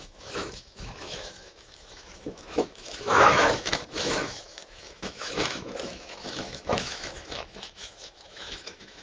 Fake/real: fake